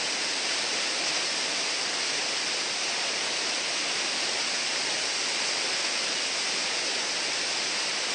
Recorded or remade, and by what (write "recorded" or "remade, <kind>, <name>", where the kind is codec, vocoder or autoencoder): recorded